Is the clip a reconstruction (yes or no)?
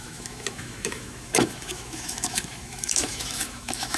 yes